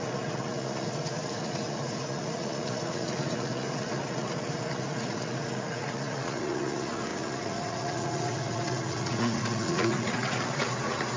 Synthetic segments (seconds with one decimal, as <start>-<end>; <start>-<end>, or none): 0.0-11.2